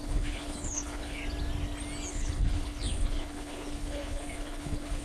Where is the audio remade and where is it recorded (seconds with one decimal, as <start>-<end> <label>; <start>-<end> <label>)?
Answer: 0.0-1.2 remade; 1.2-2.1 recorded; 2.1-5.0 remade